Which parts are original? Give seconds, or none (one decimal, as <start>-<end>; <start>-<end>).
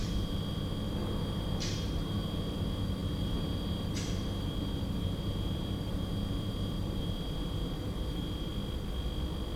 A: 8.5-9.6